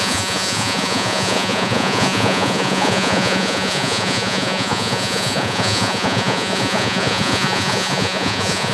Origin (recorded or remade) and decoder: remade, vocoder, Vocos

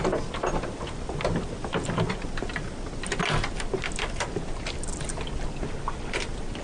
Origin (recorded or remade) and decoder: recorded